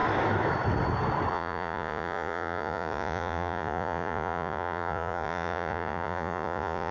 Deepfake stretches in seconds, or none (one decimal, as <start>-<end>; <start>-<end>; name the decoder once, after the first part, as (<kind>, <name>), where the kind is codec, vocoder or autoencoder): 1.3-6.9 (vocoder, Vocos)